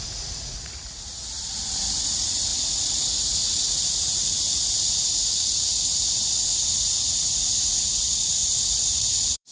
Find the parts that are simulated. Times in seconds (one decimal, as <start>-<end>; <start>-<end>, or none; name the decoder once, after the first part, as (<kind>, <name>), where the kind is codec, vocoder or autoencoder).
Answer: 0.0-1.2 (vocoder, Vocos); 2.0-9.5